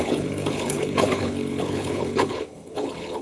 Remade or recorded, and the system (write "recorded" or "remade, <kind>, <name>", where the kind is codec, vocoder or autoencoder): remade, codec, HILCodec